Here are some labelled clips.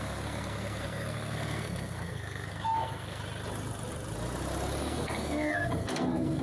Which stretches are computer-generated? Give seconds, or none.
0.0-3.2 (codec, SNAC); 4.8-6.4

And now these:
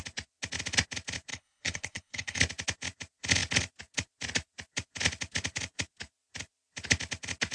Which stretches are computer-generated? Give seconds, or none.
1.3-2.4 (codec, HILCodec)

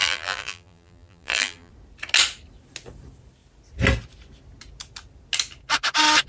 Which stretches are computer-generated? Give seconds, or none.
0.0-1.7 (vocoder, BigVGAN v2)

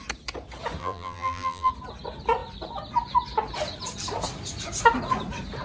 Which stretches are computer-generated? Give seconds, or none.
0.8-1.7 (vocoder, BigVGAN v2)